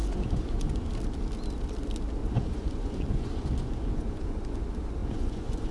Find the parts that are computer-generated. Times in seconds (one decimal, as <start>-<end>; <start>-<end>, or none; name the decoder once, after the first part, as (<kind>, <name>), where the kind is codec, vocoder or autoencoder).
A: 0.0-0.9 (vocoder, Vocos); 2.2-4.6; 5.0-5.7